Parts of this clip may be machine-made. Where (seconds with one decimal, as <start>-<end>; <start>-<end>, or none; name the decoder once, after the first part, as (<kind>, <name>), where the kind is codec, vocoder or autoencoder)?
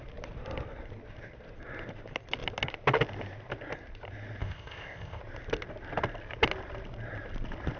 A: 4.4-5.2 (codec, ZipCodec)